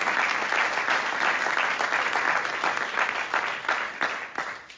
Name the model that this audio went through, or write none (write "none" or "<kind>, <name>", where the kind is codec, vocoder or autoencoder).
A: none